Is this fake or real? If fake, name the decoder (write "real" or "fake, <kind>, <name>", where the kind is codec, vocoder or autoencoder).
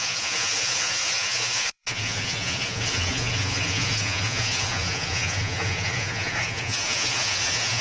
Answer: fake, vocoder, Vocos